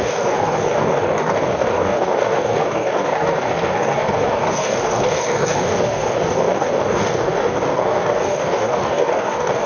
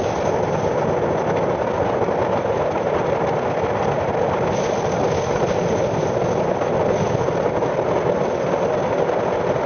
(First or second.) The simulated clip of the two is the first